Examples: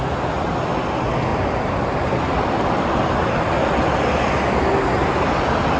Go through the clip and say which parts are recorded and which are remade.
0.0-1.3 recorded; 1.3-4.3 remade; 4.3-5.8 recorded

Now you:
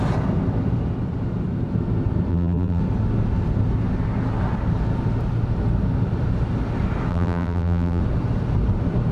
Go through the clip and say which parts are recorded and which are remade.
0.0-2.3 recorded; 2.3-2.8 remade; 2.8-7.1 recorded; 7.1-8.0 remade; 8.0-9.1 recorded

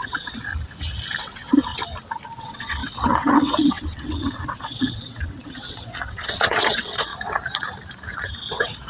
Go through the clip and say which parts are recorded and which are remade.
0.0-0.5 remade; 0.5-1.2 recorded; 1.2-1.7 remade; 1.7-2.4 recorded; 2.4-7.1 remade; 7.1-8.5 recorded; 8.5-8.9 remade

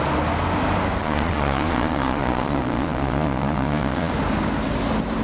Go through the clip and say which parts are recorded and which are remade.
0.0-1.0 recorded; 1.0-4.1 remade; 4.1-5.2 recorded

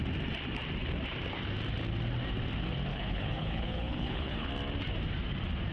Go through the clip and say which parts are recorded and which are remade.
0.0-2.9 recorded; 2.9-4.5 remade; 4.5-5.7 recorded

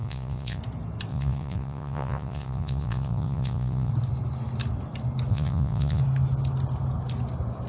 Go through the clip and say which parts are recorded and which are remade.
0.0-0.6 remade; 0.6-1.1 recorded; 1.1-3.9 remade; 3.9-5.3 recorded; 5.3-6.0 remade; 6.0-7.7 recorded